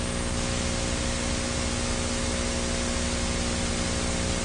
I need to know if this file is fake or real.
real